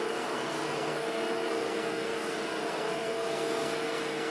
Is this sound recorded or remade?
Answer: remade